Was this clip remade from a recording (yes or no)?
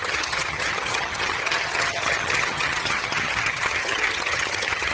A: yes